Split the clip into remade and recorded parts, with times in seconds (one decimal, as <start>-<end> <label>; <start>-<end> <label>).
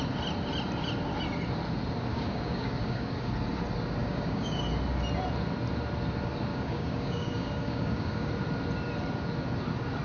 0.0-2.1 recorded; 2.1-3.3 remade; 3.3-4.0 recorded; 4.0-4.6 remade; 4.6-6.5 recorded; 6.5-8.3 remade; 8.3-10.0 recorded